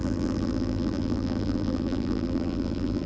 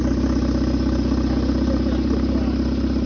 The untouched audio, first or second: second